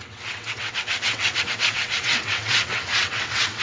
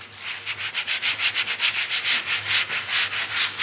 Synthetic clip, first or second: first